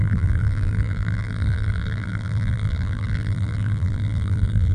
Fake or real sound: fake